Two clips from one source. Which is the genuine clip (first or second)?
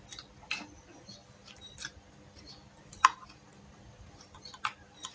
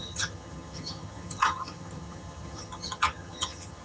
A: first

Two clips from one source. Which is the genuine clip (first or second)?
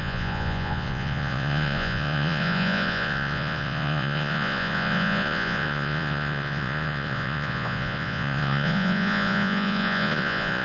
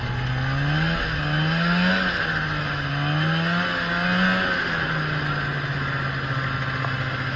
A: second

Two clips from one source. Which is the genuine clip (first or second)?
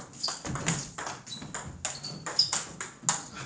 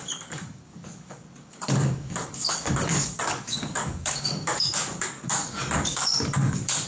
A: first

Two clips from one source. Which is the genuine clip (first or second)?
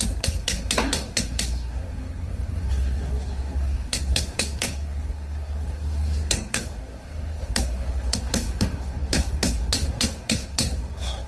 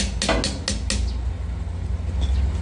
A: second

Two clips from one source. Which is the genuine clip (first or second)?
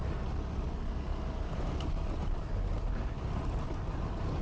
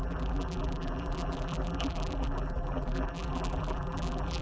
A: first